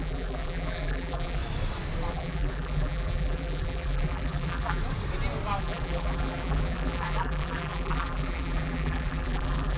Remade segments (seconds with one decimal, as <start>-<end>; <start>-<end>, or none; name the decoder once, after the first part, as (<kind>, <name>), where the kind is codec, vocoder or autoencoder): 0.0-1.4 (vocoder, BigVGAN v2); 2.1-4.8; 5.6-9.8

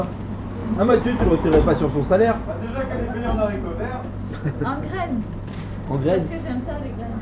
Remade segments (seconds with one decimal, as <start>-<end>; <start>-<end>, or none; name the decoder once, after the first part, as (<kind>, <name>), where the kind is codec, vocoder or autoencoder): 0.6-1.3 (vocoder, BigVGAN v2)

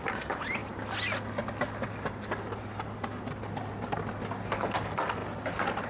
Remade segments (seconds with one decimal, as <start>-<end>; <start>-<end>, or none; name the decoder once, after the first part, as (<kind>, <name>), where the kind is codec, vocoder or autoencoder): none

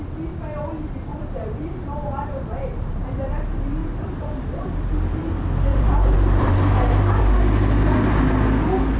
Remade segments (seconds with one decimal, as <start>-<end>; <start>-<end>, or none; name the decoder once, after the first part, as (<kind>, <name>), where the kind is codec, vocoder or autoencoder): 1.1-3.3 (vocoder, BigVGAN v2); 3.8-4.7; 5.7-7.2

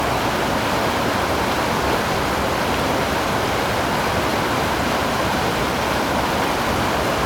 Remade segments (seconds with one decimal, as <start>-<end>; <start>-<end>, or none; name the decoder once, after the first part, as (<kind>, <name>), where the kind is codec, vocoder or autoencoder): 4.3-6.0 (vocoder, BigVGAN v2)